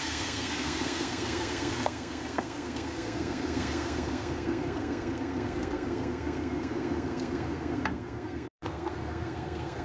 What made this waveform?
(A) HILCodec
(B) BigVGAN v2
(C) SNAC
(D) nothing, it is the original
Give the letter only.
C